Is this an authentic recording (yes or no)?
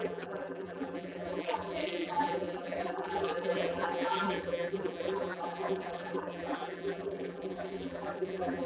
no